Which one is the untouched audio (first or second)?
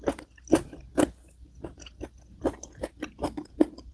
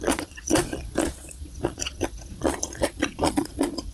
first